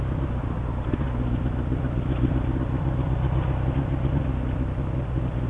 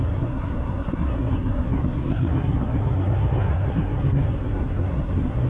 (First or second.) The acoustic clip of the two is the first